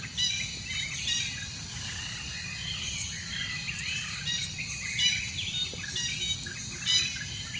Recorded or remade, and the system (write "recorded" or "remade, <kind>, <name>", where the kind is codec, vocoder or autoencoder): recorded